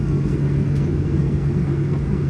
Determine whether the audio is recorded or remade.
remade